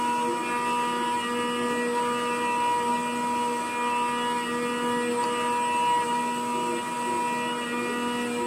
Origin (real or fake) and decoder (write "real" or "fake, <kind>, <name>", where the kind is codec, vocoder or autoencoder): real